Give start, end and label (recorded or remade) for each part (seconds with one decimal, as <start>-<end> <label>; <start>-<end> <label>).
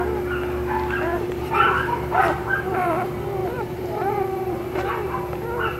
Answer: 0.0-1.1 recorded; 1.1-2.9 remade; 2.9-3.4 recorded; 3.4-5.2 remade; 5.2-5.8 recorded